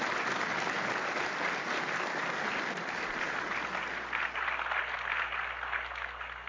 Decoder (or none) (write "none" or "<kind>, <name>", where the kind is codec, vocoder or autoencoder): none